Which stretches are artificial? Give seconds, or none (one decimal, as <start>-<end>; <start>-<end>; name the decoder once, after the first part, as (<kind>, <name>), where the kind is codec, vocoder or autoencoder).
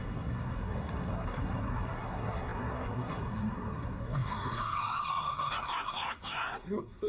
0.0-7.1 (codec, SNAC)